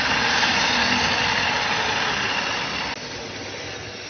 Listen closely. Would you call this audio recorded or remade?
recorded